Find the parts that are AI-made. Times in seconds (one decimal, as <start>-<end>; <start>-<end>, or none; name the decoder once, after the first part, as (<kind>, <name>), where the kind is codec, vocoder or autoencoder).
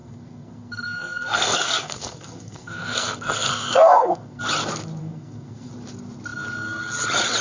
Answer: 0.0-4.4 (codec, SNAC); 5.0-5.7